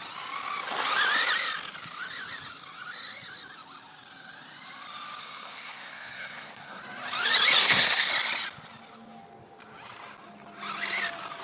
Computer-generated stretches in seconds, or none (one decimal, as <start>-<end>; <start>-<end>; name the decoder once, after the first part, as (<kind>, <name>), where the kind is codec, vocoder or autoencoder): 5.2-6.8 (codec, SNAC); 7.6-8.1